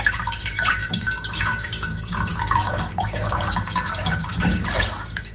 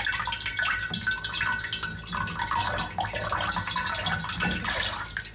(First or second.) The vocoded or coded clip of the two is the first